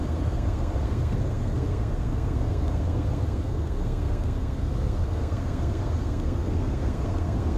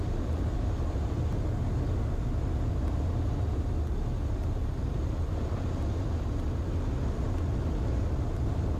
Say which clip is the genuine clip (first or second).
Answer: second